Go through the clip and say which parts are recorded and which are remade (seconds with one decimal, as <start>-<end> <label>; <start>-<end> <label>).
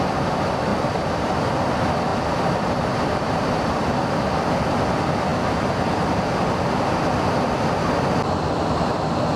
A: 0.0-0.7 recorded; 0.7-1.5 remade; 1.5-2.1 recorded; 2.1-3.7 remade; 3.7-9.4 recorded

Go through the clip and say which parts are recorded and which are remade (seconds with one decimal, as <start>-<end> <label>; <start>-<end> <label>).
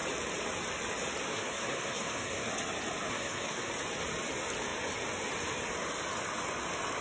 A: 0.0-1.3 recorded; 1.3-2.5 remade; 2.5-3.1 recorded; 3.1-3.7 remade; 3.7-7.0 recorded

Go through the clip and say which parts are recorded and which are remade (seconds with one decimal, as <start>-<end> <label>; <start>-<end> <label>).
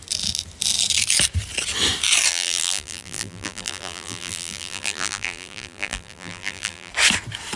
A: 0.0-2.3 recorded; 2.3-6.9 remade; 6.9-7.6 recorded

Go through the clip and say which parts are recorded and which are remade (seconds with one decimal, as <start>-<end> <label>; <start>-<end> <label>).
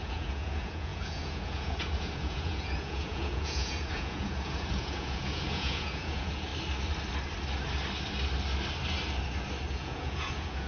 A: 0.0-6.5 remade; 6.5-9.7 recorded; 9.7-10.7 remade